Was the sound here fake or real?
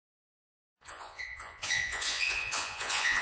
fake